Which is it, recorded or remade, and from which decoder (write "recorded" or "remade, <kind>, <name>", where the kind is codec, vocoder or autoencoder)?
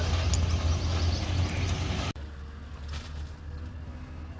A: recorded